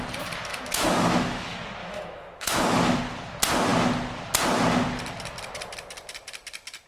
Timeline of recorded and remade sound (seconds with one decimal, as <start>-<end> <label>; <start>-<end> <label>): 0.0-0.5 recorded; 0.5-1.4 remade; 1.4-1.8 recorded; 1.8-3.0 remade; 3.0-6.9 recorded